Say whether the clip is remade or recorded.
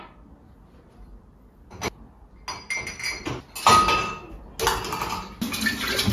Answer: recorded